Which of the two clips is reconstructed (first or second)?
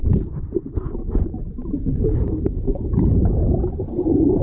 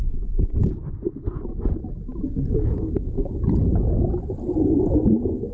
first